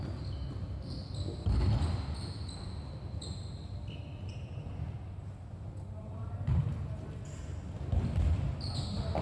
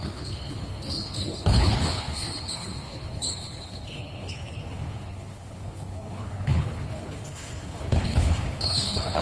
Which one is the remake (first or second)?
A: second